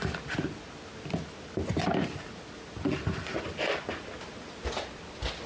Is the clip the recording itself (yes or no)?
yes